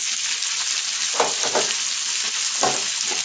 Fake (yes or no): no